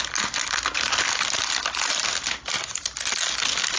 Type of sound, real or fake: real